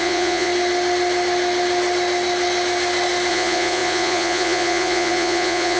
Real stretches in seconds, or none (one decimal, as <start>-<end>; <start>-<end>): 0.5-3.3